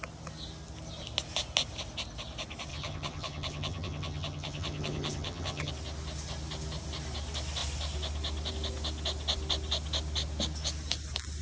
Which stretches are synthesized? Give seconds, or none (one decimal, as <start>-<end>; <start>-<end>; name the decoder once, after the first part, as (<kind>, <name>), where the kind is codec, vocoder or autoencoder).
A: 2.7-5.7 (vocoder, HiFi-GAN)